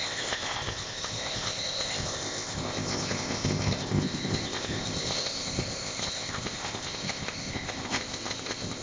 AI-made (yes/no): yes